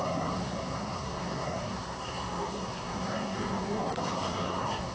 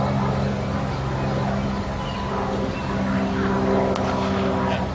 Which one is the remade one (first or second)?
first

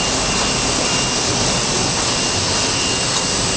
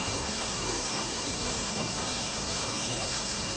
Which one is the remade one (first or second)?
second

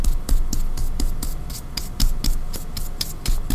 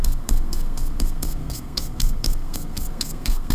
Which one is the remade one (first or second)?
second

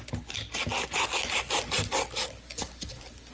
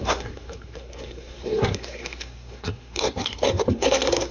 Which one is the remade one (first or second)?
second